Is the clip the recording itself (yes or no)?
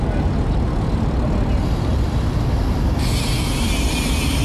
yes